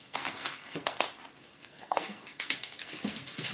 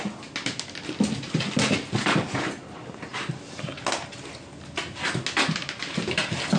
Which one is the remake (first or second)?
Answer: first